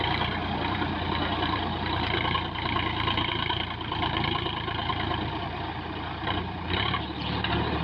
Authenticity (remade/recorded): remade